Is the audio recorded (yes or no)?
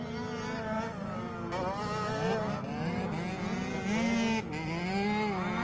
yes